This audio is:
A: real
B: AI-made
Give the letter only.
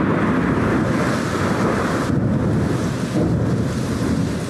A